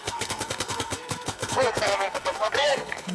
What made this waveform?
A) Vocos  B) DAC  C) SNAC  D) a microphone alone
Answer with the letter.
C